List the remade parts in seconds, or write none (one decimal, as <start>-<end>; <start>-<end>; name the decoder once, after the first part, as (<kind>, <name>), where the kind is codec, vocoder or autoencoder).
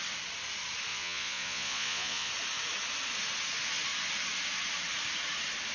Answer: 0.9-2.3 (vocoder, Vocos)